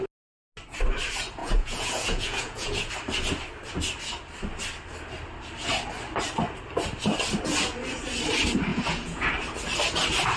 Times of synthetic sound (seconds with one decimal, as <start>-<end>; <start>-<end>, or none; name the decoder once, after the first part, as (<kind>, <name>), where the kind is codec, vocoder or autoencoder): 1.4-2.9 (vocoder, Vocos); 8.7-9.3